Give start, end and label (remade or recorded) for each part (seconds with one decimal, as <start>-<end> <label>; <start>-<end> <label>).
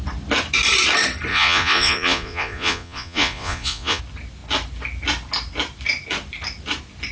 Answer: 0.0-1.3 recorded; 1.3-4.0 remade; 4.0-7.1 recorded